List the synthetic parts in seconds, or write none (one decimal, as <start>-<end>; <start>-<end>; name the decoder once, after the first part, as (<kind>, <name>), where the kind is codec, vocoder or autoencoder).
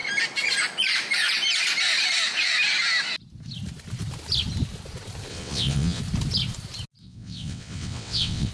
5.3-6.0 (vocoder, WaveNeXt); 7.0-8.5